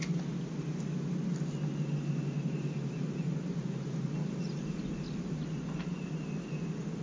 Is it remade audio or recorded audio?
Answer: recorded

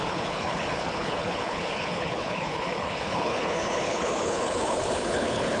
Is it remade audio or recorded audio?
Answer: remade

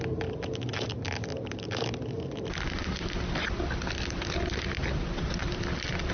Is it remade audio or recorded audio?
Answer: recorded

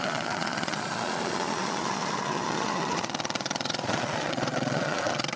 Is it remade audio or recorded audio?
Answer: remade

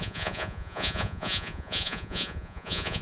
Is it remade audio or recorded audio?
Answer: remade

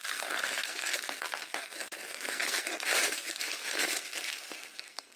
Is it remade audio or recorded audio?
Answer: remade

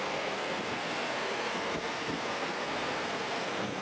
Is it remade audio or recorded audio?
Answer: remade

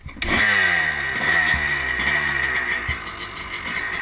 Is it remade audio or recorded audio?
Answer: recorded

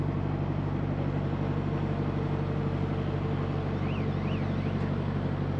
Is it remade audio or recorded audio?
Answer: recorded